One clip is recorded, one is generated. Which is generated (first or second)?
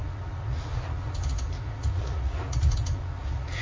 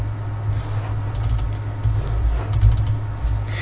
first